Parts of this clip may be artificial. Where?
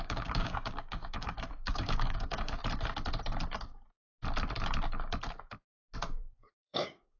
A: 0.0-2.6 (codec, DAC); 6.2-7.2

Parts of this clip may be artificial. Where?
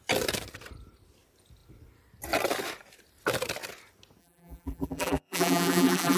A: 4.2-6.2 (vocoder, BigVGAN v2)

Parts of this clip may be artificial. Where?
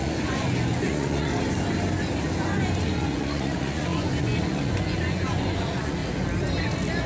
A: 0.0-1.3 (vocoder, Vocos); 2.8-6.0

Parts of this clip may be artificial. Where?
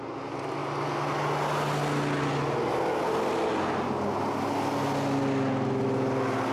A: none